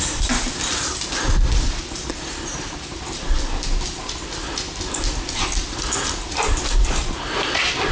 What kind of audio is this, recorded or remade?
recorded